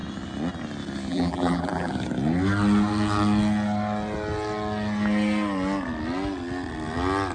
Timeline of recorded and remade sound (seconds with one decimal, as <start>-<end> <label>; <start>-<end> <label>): 0.0-1.1 recorded; 1.1-1.9 remade; 1.9-7.3 recorded

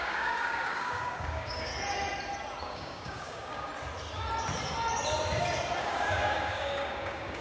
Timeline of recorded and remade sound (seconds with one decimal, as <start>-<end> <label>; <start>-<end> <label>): 0.0-1.7 remade; 1.7-2.6 recorded; 2.6-3.7 remade; 3.7-5.8 recorded; 5.8-7.4 remade

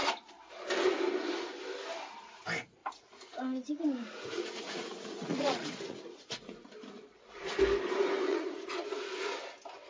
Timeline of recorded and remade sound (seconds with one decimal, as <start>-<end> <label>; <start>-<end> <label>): 0.0-2.8 recorded; 2.8-6.7 remade; 6.7-8.3 recorded; 8.3-9.3 remade; 9.3-9.9 recorded

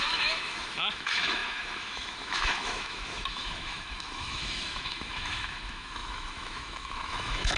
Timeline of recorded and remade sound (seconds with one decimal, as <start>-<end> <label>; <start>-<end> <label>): 0.0-7.6 remade

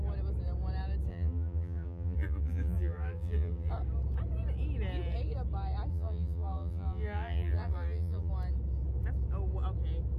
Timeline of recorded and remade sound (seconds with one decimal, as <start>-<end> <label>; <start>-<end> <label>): 0.0-1.1 recorded; 1.1-3.7 remade; 3.7-5.9 recorded; 5.9-8.3 remade; 8.3-10.2 recorded